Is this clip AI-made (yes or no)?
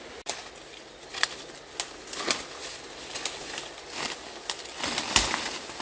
no